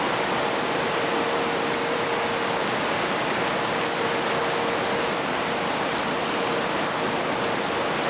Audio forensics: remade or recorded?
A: recorded